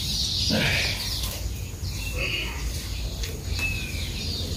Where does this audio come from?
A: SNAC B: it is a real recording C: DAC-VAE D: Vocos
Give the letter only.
B